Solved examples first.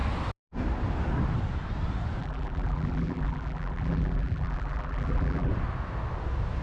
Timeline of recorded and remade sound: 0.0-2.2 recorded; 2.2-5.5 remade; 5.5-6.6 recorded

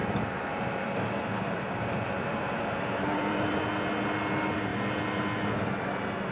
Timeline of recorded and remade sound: 0.0-3.6 remade; 3.6-6.3 recorded

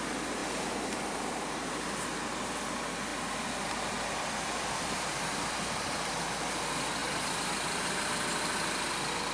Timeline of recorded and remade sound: 0.0-0.4 recorded; 0.4-2.1 remade; 2.1-3.1 recorded; 3.1-6.1 remade; 6.1-7.0 recorded; 7.0-8.4 remade; 8.4-9.3 recorded

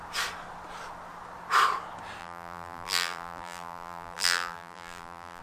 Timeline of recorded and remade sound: 0.0-2.2 recorded; 2.2-5.4 remade

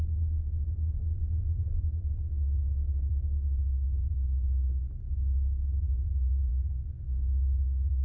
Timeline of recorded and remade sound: 0.0-5.9 recorded; 5.9-6.5 remade; 6.5-8.0 recorded

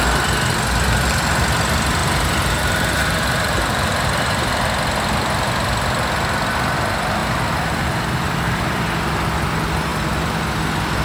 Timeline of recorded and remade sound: 0.0-2.0 recorded; 2.0-4.5 remade; 4.5-7.2 recorded; 7.2-8.8 remade; 8.8-11.0 recorded